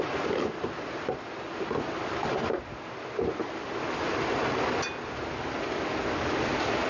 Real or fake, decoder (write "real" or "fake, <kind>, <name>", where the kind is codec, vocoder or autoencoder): real